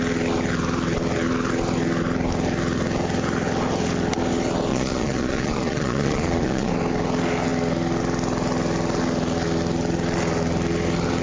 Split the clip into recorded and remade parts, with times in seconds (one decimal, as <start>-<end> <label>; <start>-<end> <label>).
0.0-4.7 recorded; 4.7-6.7 remade; 6.7-11.2 recorded